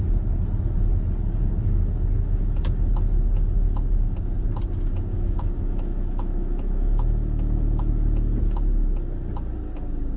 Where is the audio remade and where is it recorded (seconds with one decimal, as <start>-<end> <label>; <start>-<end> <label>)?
0.0-5.1 recorded; 5.1-7.9 remade; 7.9-10.2 recorded